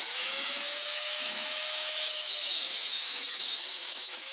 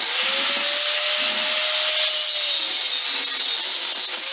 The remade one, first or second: first